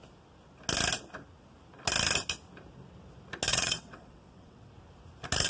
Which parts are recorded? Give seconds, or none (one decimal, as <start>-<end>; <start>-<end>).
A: 0.0-3.5; 4.7-5.5